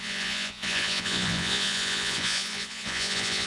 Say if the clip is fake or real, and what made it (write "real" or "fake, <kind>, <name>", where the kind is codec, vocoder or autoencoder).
fake, vocoder, Vocos